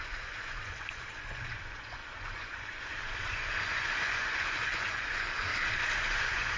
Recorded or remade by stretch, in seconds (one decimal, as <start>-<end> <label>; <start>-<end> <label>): 0.0-5.5 remade; 5.5-6.0 recorded; 6.0-6.6 remade